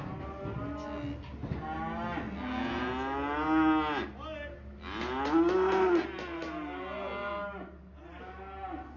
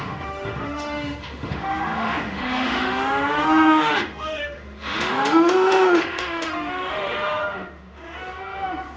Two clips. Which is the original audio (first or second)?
first